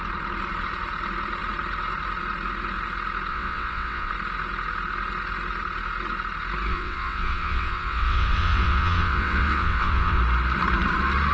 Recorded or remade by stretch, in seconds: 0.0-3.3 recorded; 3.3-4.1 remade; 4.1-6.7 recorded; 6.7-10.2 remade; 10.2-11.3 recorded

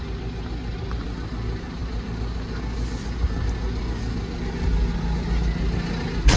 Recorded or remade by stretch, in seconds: 0.0-6.4 recorded